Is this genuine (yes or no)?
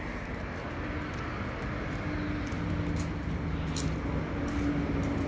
yes